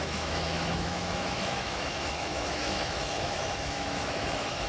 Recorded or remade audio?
remade